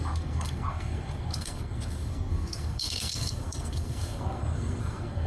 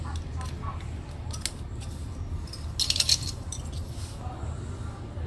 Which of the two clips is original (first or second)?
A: second